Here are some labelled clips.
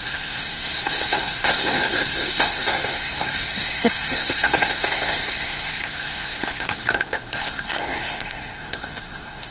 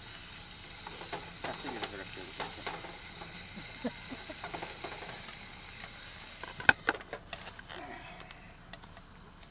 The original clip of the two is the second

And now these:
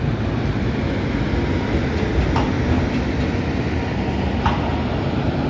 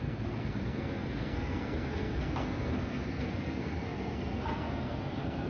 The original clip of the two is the first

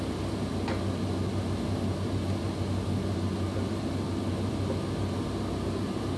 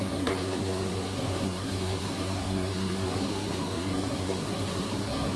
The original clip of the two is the first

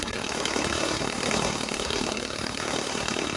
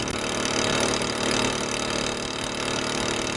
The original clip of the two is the second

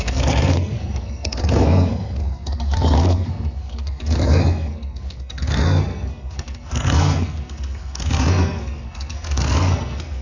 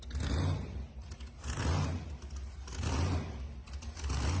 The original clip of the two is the second